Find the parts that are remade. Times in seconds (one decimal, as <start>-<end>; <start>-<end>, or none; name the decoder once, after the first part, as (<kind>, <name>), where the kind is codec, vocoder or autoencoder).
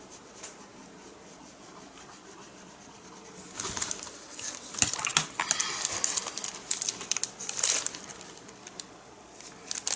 none